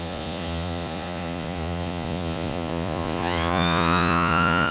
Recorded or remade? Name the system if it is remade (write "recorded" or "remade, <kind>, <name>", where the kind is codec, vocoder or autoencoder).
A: remade, vocoder, Vocos